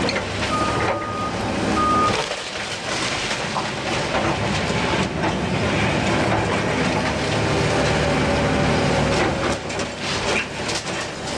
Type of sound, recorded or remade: recorded